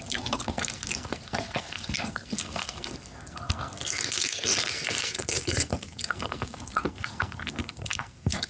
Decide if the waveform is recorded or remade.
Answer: remade